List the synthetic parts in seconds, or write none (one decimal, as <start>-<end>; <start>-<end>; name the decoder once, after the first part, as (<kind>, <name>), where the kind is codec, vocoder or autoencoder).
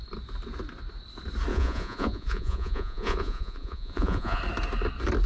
1.5-4.4 (vocoder, Vocos)